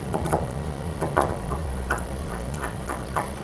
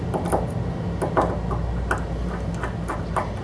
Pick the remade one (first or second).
first